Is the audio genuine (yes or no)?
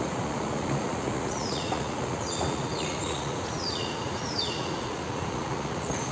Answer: no